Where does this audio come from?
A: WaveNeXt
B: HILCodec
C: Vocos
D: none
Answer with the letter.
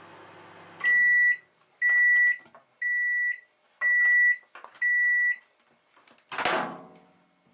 D